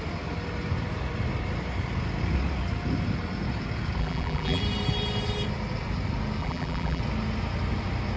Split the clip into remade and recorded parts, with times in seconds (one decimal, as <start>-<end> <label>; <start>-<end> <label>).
0.0-4.0 recorded; 4.0-4.6 remade; 4.6-6.4 recorded; 6.4-7.0 remade; 7.0-8.2 recorded